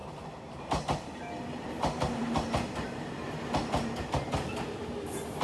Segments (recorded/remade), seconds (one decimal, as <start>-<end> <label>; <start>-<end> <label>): 0.0-5.4 recorded